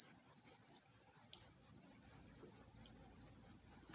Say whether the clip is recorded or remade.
recorded